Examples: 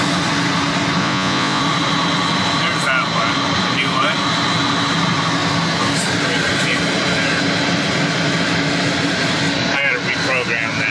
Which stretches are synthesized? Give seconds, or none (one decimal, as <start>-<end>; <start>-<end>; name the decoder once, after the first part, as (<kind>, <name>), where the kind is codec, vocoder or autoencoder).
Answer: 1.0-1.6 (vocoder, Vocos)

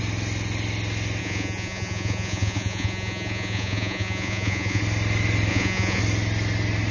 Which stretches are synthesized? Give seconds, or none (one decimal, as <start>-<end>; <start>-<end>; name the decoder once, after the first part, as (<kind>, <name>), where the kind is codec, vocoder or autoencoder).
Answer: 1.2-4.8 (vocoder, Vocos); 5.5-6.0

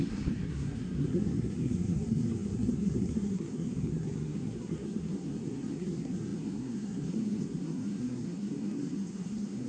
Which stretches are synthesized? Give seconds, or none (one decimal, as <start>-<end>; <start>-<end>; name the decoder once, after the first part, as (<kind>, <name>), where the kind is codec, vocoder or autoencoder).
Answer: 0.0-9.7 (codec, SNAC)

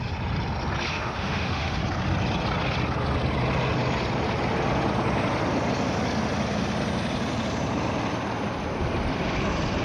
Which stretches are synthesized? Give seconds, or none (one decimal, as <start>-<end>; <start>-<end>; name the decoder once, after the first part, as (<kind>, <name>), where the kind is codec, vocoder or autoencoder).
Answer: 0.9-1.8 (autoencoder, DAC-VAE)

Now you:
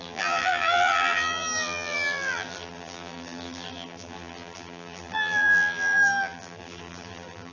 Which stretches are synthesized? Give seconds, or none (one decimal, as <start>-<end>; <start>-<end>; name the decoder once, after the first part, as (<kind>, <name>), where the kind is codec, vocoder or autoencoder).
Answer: 0.0-7.5 (vocoder, BigVGAN v2)